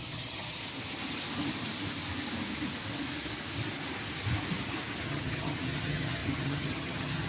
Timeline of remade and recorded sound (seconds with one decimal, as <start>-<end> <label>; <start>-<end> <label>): 0.0-0.6 remade; 0.6-5.0 recorded; 5.0-7.3 remade